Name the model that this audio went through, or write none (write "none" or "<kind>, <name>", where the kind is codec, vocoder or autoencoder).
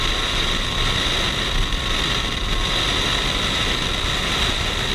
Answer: none